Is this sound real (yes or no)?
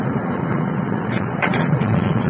no